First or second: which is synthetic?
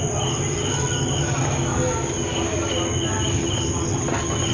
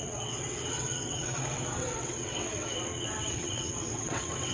second